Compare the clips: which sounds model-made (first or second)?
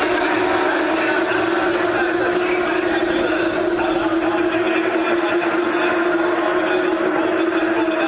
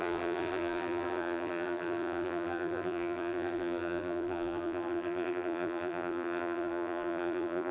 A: second